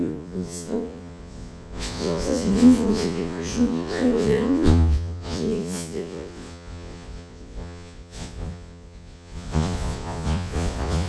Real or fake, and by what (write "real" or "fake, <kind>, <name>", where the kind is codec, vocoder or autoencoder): fake, vocoder, Vocos